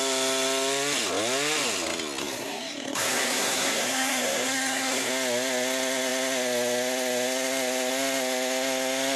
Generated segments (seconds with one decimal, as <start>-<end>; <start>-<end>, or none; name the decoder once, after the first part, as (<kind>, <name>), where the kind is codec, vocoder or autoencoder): 2.2-5.1 (codec, SNAC)